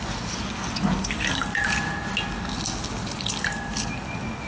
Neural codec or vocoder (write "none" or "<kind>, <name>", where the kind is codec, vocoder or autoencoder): none